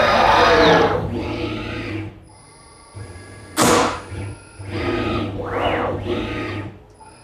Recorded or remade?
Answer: recorded